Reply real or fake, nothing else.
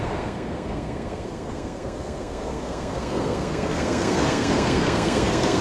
fake